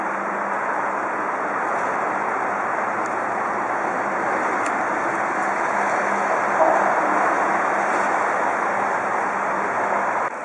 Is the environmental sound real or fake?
real